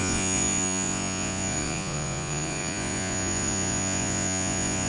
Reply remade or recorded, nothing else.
remade